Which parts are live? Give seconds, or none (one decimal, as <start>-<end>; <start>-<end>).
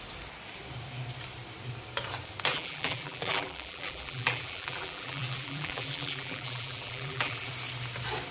0.0-2.5; 7.5-8.3